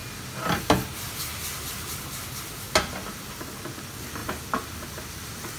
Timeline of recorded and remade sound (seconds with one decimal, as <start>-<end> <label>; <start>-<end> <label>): 0.0-5.6 recorded